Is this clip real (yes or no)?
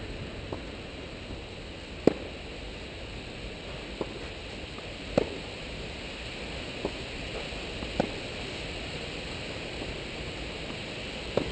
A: yes